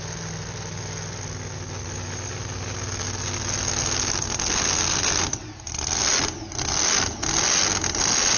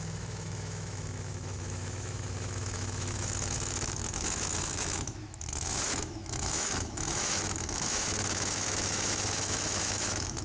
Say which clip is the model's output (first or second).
second